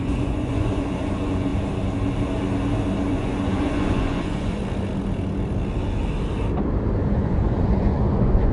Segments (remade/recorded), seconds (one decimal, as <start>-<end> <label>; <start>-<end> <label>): 0.0-1.5 remade; 1.5-3.1 recorded; 3.1-4.6 remade; 4.6-7.1 recorded; 7.1-8.5 remade

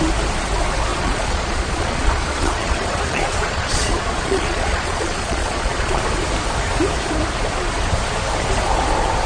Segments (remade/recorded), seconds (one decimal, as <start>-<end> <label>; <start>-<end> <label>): 0.0-0.9 recorded; 0.9-6.0 remade; 6.0-9.3 recorded

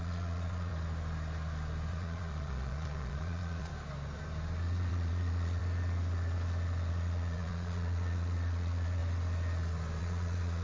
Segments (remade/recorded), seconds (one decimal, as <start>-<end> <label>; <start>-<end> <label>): 0.0-0.7 remade; 0.7-1.9 recorded; 1.9-3.7 remade; 3.7-4.9 recorded; 4.9-5.6 remade; 5.6-6.9 recorded; 6.9-9.0 remade; 9.0-10.0 recorded; 10.0-10.6 remade

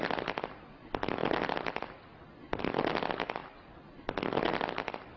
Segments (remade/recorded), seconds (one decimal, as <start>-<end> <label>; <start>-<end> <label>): 0.0-5.2 recorded

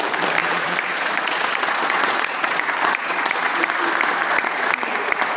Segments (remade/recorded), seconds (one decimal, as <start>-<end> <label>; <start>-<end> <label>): 0.0-0.4 recorded; 0.4-3.6 remade; 3.6-4.2 recorded; 4.2-4.7 remade; 4.7-5.4 recorded

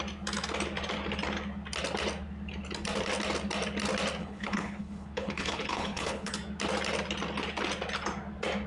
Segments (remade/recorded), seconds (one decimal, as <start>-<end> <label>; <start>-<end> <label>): 0.0-4.2 recorded; 4.2-6.3 remade; 6.3-8.7 recorded

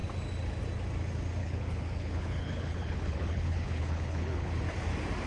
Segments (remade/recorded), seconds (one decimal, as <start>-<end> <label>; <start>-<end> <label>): 0.0-1.4 recorded; 1.4-4.6 remade; 4.6-5.3 recorded

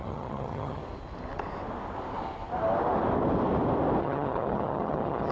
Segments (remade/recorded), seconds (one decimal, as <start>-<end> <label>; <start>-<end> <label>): 0.0-0.8 remade; 0.8-4.0 recorded; 4.0-5.3 remade